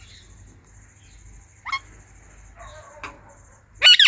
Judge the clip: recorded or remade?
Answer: recorded